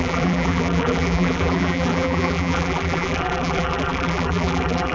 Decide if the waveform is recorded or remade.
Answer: remade